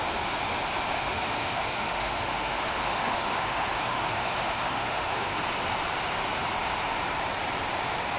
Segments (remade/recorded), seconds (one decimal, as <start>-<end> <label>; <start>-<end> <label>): 0.0-0.9 recorded; 0.9-5.4 remade; 5.4-8.2 recorded

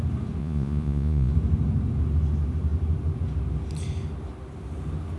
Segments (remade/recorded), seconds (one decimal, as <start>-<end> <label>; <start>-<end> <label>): 0.0-0.4 recorded; 0.4-1.3 remade; 1.3-5.2 recorded

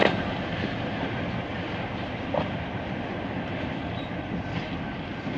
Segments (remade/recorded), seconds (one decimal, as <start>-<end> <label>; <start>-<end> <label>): 0.0-5.4 recorded

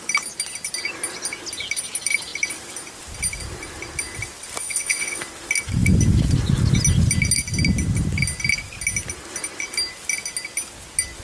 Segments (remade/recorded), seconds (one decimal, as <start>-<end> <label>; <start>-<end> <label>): 0.0-4.6 recorded; 4.6-5.2 remade; 5.2-11.2 recorded